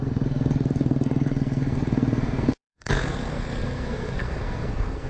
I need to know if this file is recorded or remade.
remade